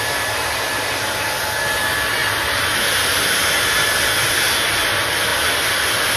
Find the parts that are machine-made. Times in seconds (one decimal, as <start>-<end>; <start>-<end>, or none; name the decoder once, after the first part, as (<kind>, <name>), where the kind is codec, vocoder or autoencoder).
5.3-6.2 (vocoder, BigVGAN v2)

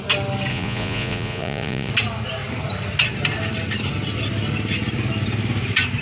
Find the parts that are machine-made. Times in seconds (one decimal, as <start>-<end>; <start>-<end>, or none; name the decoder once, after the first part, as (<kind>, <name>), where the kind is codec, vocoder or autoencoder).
0.5-1.9 (vocoder, Vocos)

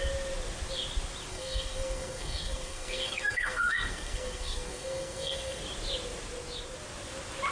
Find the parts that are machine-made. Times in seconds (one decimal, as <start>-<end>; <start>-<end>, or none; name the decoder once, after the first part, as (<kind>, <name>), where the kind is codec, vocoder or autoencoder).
1.3-5.6 (codec, SNAC)

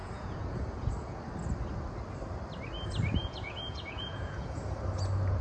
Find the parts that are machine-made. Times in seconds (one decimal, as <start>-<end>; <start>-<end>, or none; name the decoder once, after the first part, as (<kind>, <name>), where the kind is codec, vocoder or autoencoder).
0.0-1.2 (vocoder, Vocos); 3.2-4.6

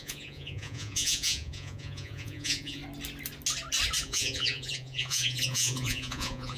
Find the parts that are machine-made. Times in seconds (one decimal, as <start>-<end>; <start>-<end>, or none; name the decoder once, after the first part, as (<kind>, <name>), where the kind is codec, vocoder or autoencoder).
0.0-2.8 (vocoder, Vocos); 4.0-6.6

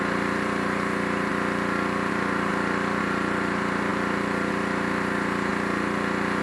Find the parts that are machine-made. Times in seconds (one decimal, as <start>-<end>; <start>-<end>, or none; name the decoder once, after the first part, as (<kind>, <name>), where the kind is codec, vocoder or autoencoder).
0.0-1.3 (vocoder, BigVGAN v2); 2.1-2.5; 3.0-5.5

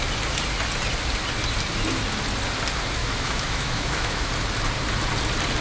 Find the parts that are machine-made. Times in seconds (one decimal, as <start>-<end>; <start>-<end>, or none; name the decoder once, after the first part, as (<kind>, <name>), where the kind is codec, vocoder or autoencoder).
3.0-4.3 (autoencoder, DAC-VAE)

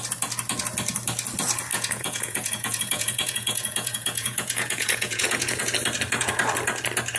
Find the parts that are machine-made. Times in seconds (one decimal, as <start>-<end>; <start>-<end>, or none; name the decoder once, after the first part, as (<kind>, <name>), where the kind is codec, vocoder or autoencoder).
1.7-5.6 (vocoder, Vocos)